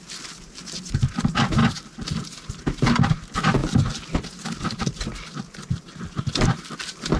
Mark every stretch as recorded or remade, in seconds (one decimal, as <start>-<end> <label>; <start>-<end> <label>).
0.0-7.2 recorded